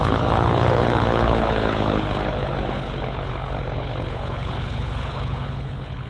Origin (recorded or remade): remade